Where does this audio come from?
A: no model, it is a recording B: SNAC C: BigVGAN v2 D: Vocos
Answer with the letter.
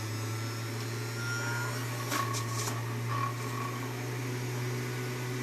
A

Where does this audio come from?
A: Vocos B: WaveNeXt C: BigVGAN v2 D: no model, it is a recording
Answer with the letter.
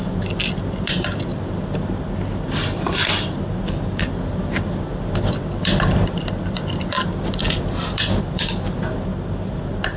C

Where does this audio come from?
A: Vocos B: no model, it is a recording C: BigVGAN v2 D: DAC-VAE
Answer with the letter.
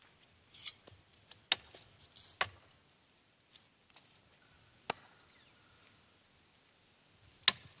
B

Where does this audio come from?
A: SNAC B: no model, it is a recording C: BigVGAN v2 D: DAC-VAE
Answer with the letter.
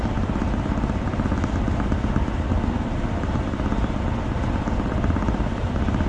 B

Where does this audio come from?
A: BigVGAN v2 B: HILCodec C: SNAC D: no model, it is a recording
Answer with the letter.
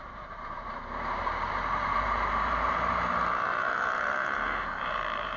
A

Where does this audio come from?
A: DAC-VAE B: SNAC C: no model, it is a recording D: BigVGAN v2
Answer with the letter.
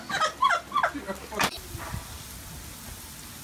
C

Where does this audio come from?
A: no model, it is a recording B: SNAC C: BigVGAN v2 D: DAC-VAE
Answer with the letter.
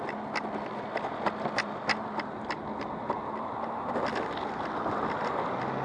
A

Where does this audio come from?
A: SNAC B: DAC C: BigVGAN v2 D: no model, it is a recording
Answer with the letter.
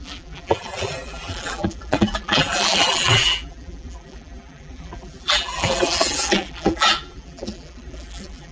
C